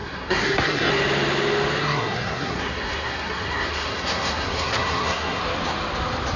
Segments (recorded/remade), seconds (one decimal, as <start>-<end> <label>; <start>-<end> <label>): 0.0-0.9 remade; 0.9-1.8 recorded; 1.8-5.4 remade; 5.4-6.4 recorded